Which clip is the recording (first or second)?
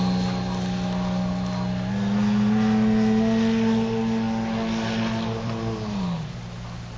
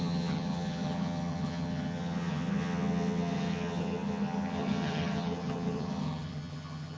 first